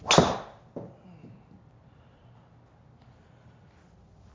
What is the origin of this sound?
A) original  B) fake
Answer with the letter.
A